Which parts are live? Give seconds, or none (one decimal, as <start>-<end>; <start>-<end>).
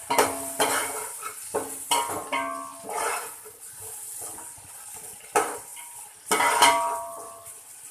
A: 0.0-5.7; 7.2-7.9